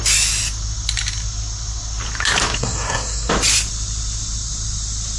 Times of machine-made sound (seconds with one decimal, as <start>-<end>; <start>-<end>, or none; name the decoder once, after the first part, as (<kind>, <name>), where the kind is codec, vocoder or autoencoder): 2.6-3.3 (codec, SNAC)